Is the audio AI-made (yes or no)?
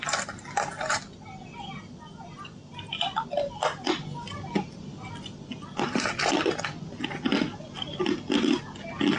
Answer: no